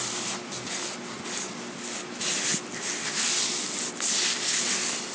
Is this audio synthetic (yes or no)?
no